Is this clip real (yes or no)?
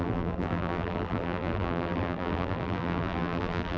no